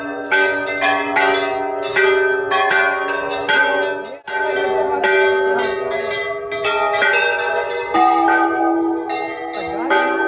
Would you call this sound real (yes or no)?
yes